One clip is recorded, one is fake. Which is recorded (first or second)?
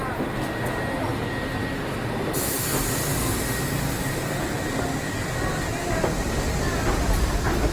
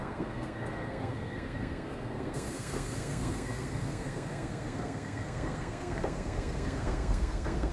first